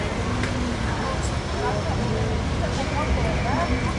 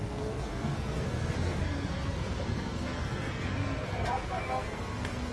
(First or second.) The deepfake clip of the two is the second